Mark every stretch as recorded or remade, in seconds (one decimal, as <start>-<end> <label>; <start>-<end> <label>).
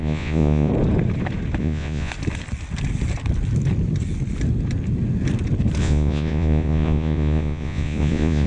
0.0-0.7 remade; 0.7-1.6 recorded; 1.6-2.1 remade; 2.1-5.8 recorded; 5.8-8.5 remade